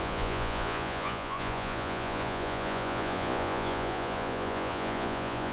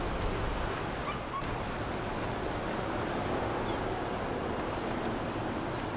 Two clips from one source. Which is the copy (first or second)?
first